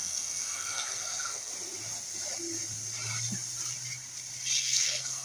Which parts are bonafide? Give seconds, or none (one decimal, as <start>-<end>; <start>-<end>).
1.5-4.6